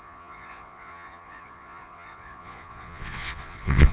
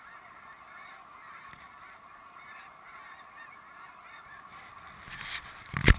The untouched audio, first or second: second